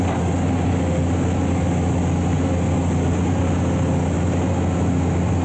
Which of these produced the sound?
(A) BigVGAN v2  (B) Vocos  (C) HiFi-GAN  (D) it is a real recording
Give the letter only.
D